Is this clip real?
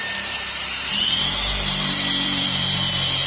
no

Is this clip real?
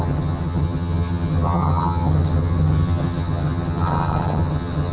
no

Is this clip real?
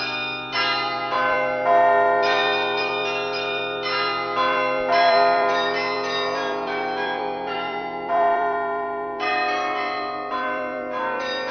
no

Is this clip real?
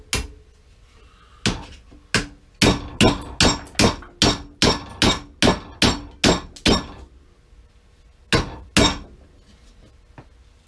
yes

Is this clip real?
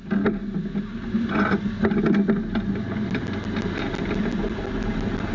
yes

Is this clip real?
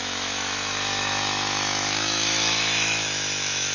no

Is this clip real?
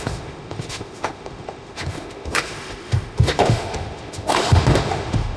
no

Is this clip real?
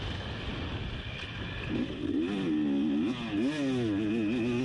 yes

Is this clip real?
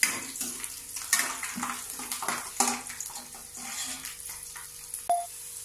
yes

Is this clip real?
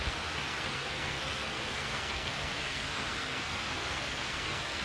no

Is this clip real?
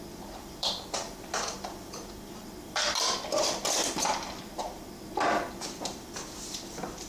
no